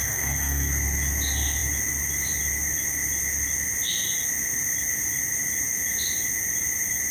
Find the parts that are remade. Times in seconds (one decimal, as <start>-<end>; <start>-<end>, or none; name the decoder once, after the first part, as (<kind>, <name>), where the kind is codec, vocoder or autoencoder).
0.0-0.7 (codec, SNAC)